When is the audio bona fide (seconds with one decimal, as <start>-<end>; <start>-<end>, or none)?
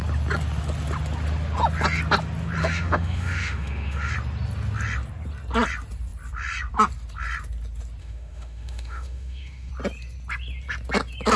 0.0-2.6; 4.1-8.0; 9.7-11.4